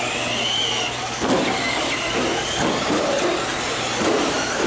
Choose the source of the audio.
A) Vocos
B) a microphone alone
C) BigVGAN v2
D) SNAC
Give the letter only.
B